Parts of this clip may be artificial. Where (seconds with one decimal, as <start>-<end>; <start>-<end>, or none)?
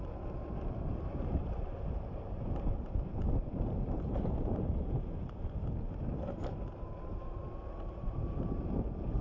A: 0.0-7.4; 8.0-9.2